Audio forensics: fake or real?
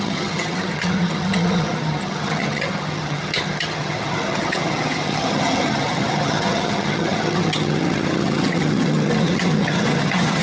fake